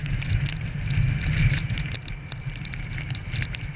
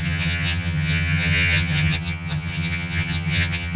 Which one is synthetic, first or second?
second